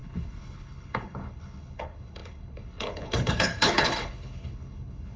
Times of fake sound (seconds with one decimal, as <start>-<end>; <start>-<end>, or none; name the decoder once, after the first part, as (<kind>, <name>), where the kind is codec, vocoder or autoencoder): 0.0-5.2 (codec, HILCodec)